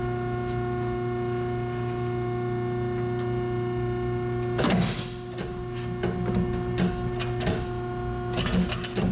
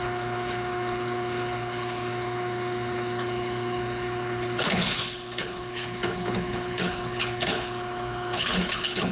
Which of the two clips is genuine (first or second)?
first